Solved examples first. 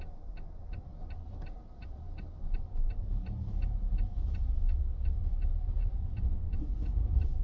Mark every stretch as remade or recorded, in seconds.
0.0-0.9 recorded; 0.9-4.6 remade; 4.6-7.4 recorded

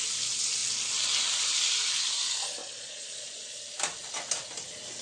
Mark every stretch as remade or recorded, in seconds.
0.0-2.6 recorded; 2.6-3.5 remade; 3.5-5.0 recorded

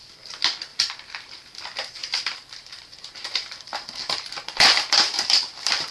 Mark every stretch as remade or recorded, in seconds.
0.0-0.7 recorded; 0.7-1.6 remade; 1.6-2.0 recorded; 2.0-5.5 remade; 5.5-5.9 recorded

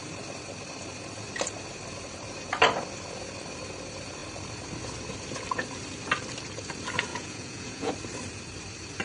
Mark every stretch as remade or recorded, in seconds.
0.0-7.1 recorded; 7.1-7.9 remade; 7.9-9.0 recorded

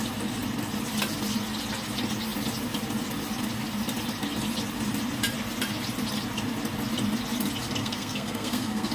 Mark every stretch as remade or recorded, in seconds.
0.0-7.8 recorded; 7.8-8.9 remade

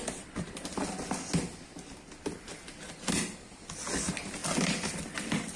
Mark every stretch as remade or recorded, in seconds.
0.0-5.6 recorded